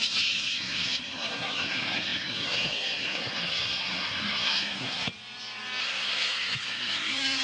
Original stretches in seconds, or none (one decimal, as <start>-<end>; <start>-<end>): 5.1-5.8